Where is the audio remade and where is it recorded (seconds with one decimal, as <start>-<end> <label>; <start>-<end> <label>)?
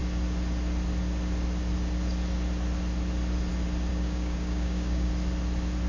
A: 0.0-3.9 recorded; 3.9-5.1 remade; 5.1-5.9 recorded